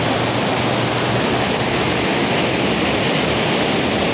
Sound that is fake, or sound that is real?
real